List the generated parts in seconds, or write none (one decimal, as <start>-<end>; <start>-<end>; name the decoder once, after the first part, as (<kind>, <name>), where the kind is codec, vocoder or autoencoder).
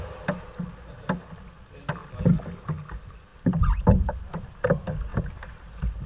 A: 3.3-4.5 (vocoder, BigVGAN v2); 5.1-6.1